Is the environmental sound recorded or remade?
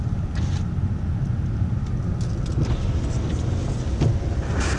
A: recorded